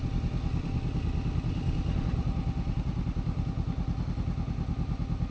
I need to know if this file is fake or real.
real